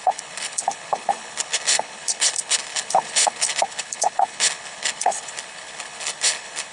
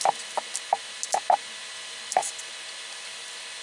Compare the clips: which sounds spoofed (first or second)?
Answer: first